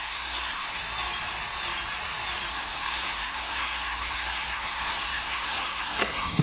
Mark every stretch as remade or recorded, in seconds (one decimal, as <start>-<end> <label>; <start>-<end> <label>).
0.0-0.8 remade; 0.8-2.5 recorded; 2.5-6.4 remade